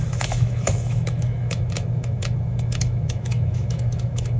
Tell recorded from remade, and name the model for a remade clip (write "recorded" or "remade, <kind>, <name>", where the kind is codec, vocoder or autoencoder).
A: remade, autoencoder, DAC-VAE